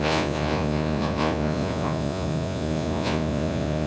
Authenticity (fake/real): fake